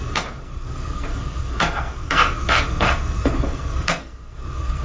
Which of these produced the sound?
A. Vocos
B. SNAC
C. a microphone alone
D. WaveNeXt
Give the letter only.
B